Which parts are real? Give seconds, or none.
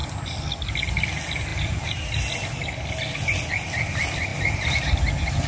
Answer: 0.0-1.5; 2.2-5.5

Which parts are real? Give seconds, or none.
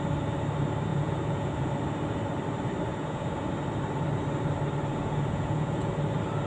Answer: 0.0-0.9; 1.7-2.9; 3.5-4.9; 5.9-6.5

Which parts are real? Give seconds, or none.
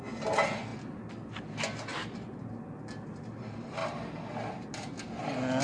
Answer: 0.0-5.6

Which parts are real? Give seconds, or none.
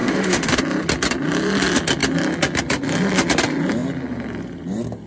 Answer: 0.6-5.1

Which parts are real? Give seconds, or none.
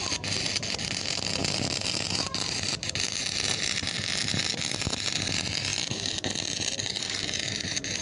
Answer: 0.0-1.4; 3.2-5.7; 7.2-8.0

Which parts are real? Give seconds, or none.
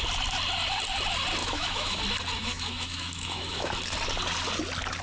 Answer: 0.0-1.4; 2.0-2.4; 3.7-5.0